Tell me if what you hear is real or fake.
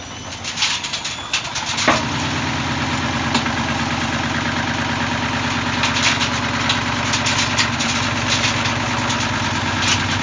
real